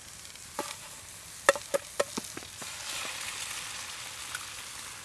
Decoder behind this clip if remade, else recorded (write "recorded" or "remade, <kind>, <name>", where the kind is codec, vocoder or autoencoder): recorded